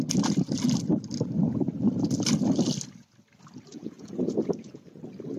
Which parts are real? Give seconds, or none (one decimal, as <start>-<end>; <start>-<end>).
0.0-3.7; 5.0-5.4